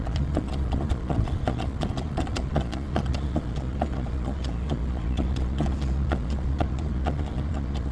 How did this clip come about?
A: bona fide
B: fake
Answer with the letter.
B